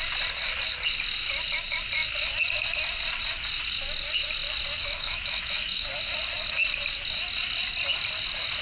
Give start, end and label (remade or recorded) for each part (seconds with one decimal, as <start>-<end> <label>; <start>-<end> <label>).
0.0-4.8 recorded; 4.8-6.0 remade; 6.0-8.6 recorded